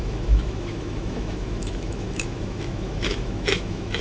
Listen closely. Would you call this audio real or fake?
fake